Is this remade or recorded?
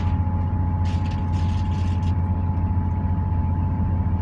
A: recorded